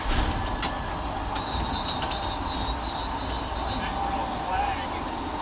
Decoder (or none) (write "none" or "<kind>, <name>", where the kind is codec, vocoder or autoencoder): none